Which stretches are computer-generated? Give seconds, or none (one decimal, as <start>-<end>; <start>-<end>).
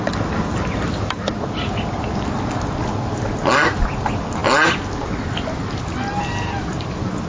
none